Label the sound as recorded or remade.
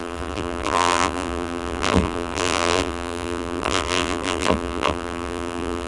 remade